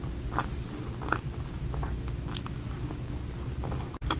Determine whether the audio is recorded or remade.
recorded